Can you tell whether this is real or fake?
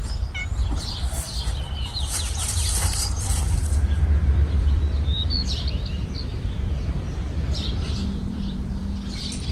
fake